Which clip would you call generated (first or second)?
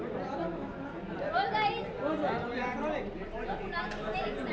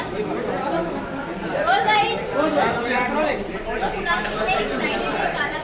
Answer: second